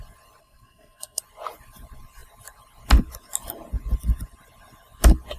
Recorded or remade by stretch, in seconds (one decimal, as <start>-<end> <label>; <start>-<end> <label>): 0.0-0.4 recorded; 0.4-1.2 remade; 1.2-5.4 recorded